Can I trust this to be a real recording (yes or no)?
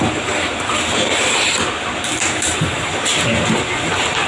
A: yes